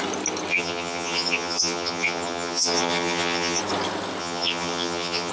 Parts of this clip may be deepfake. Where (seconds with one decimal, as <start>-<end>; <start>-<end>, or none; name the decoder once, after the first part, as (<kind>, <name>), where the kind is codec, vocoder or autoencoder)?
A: 0.5-3.6 (vocoder, HiFi-GAN); 4.2-5.3